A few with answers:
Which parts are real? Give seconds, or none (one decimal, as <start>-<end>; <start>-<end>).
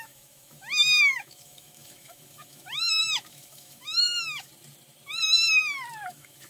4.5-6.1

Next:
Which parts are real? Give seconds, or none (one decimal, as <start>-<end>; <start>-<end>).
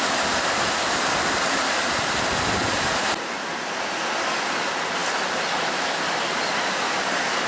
0.0-7.5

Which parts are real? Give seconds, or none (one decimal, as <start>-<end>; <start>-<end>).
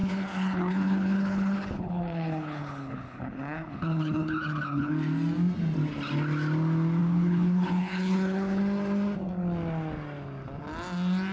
4.9-7.0; 8.6-11.3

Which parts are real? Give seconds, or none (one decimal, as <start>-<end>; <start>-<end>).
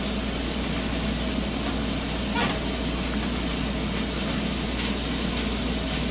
0.0-6.1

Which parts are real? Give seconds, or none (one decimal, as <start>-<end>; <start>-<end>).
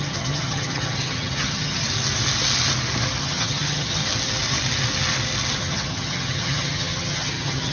1.8-3.2; 4.0-5.6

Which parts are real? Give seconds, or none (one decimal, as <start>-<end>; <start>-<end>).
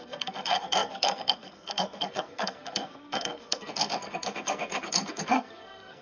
none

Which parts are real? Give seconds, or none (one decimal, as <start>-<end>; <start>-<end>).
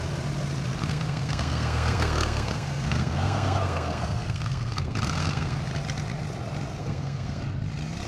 0.0-0.8; 5.6-6.8; 7.4-8.1